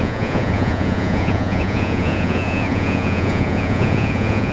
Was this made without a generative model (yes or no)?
no